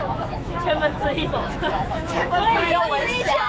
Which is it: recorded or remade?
remade